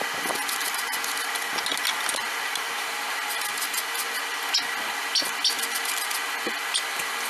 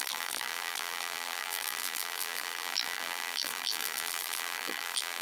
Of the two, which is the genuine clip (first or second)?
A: first